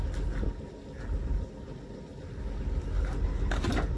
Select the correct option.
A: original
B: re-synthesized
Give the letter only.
A